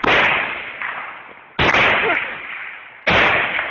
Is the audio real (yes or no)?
yes